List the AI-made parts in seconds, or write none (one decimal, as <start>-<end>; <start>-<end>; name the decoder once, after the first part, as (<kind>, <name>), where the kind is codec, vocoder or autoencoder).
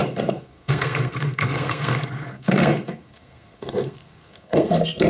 0.0-5.1 (codec, SNAC)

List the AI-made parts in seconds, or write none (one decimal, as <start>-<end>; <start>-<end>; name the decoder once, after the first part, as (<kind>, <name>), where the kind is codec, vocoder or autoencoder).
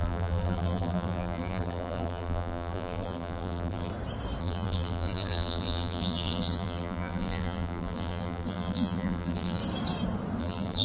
0.0-3.9 (vocoder, BigVGAN v2); 4.4-9.6; 10.4-10.8